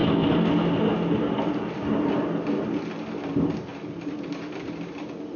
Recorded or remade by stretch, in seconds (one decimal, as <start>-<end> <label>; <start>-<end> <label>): 0.0-5.4 recorded